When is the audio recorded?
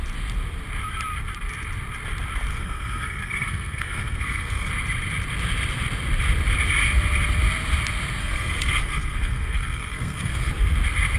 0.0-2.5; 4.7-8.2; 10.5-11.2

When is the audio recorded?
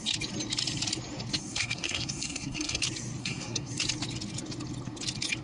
0.0-1.4; 2.8-3.2; 3.7-5.4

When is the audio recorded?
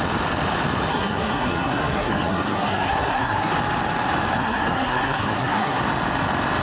0.0-0.9; 3.5-4.3; 5.8-6.6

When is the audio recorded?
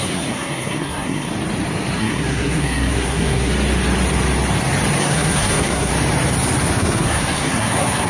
1.3-2.0; 3.5-5.0; 5.9-6.8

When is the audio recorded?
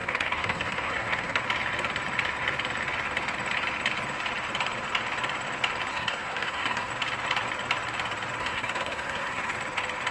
1.4-5.9; 6.9-8.4; 9.5-10.1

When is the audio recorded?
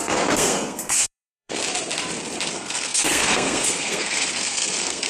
1.6-2.5